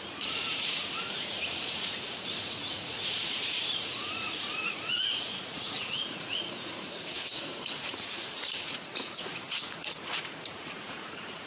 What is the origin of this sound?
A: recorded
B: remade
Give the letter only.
B